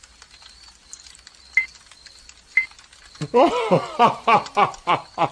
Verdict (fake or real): real